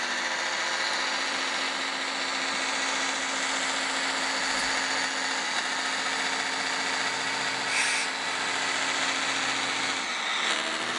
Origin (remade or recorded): recorded